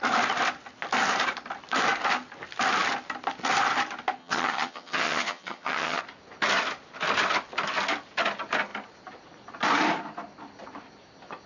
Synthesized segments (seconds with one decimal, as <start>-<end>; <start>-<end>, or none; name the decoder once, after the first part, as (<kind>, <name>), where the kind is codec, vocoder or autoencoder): 4.2-6.0 (vocoder, HiFi-GAN)